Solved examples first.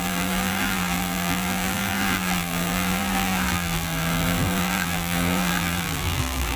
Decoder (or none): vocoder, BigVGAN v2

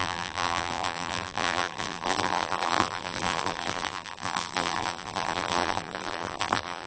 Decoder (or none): vocoder, BigVGAN v2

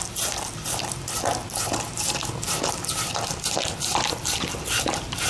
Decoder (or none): none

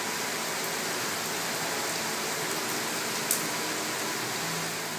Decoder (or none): none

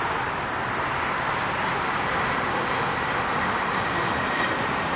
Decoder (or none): vocoder, BigVGAN v2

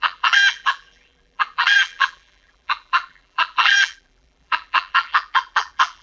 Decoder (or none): vocoder, BigVGAN v2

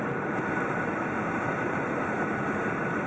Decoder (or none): vocoder, BigVGAN v2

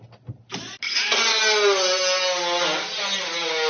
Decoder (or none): none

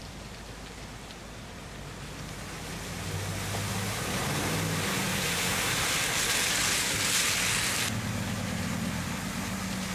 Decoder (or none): none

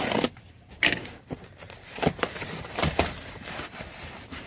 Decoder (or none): vocoder, BigVGAN v2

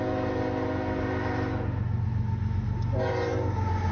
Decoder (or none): none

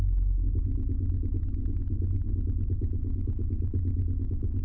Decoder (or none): none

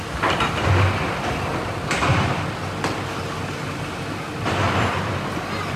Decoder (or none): none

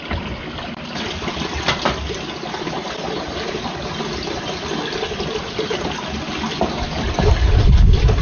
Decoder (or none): none